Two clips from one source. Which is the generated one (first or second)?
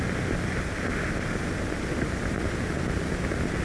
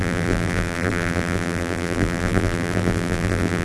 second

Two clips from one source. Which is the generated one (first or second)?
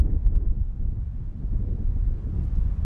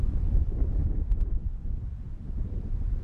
second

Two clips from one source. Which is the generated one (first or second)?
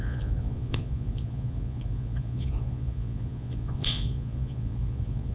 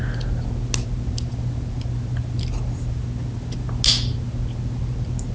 first